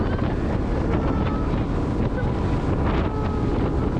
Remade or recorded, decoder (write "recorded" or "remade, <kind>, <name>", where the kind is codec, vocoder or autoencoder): recorded